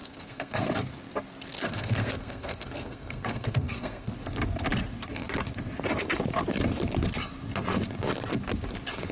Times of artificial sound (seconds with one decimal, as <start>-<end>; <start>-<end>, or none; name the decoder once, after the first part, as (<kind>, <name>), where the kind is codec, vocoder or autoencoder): 0.0-0.7 (codec, SNAC); 1.6-4.1